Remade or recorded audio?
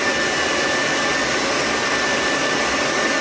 recorded